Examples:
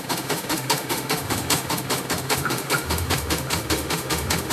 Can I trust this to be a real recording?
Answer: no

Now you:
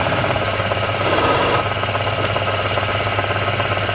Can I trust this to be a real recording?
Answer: yes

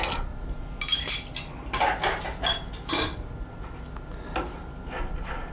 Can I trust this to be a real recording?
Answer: yes